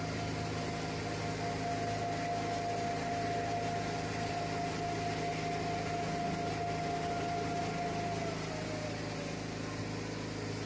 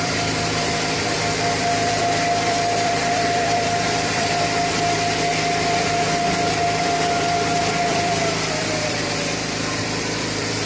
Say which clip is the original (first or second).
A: first